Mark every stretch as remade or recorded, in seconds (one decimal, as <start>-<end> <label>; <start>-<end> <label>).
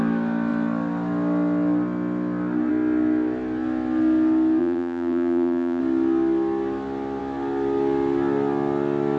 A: 0.0-4.6 recorded; 4.6-5.8 remade; 5.8-9.2 recorded